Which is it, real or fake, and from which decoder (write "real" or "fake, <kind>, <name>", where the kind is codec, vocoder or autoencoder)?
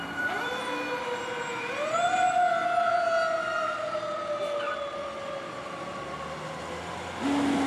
real